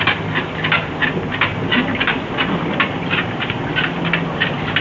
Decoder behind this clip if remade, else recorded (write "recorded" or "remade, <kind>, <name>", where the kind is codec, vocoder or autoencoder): recorded